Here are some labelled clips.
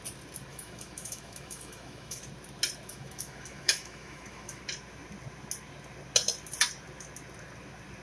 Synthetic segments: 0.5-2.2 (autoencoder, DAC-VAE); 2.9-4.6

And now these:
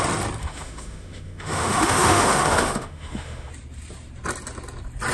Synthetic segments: 0.4-3.5 (autoencoder, DAC-VAE)

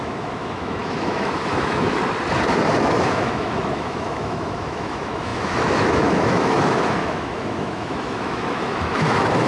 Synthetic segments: 0.0-2.0 (autoencoder, DAC-VAE); 2.8-9.5

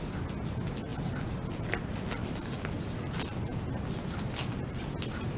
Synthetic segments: none

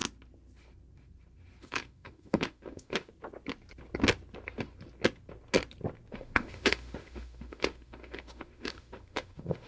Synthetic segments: 1.6-3.1 (autoencoder, DAC-VAE); 6.1-9.7

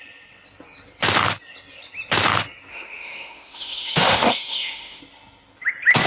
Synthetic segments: 2.7-5.0 (autoencoder, DAC-VAE)